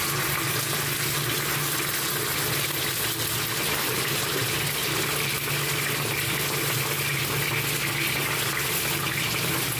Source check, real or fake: real